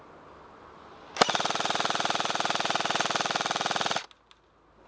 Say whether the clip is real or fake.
real